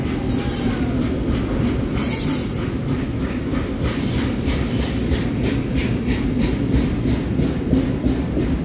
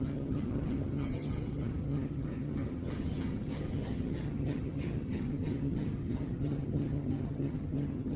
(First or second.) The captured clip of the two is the first